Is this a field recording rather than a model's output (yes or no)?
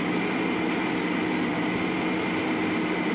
yes